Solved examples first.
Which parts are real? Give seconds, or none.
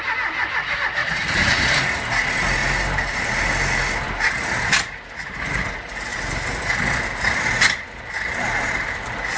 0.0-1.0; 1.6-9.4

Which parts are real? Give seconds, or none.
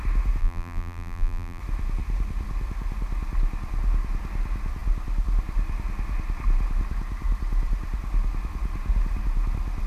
0.0-0.4; 1.6-9.9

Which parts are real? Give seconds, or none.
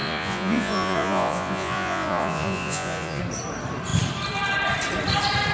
3.2-5.5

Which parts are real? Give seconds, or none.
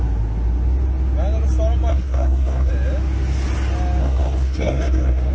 0.0-1.9; 2.7-4.0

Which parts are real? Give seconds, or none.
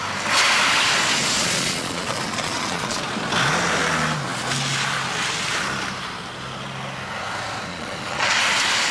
0.0-1.4; 3.0-7.7; 8.4-8.9